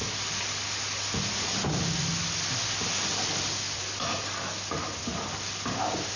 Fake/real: real